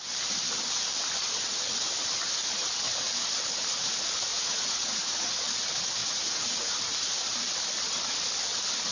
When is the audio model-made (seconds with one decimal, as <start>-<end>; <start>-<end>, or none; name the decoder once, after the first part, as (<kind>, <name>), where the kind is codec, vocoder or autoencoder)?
4.3-5.3 (vocoder, Vocos); 6.0-7.1